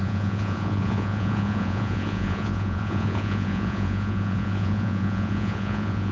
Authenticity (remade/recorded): remade